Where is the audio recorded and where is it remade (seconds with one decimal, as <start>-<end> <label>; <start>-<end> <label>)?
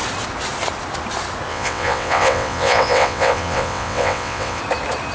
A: 0.0-1.5 recorded; 1.5-4.6 remade; 4.6-5.1 recorded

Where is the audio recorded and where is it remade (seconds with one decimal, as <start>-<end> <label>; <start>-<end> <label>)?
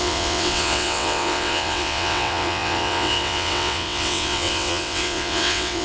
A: 0.0-5.8 remade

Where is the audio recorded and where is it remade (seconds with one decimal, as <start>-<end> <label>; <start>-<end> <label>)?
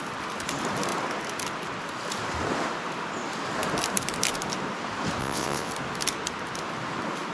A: 0.0-5.2 recorded; 5.2-5.7 remade; 5.7-7.3 recorded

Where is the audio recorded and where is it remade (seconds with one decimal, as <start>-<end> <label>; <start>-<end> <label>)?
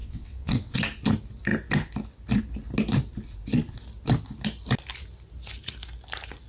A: 0.0-0.8 remade; 0.8-6.5 recorded